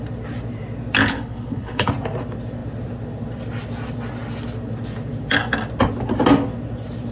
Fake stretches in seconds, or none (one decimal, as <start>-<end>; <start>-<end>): 1.0-1.9